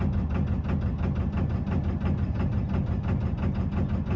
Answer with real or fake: real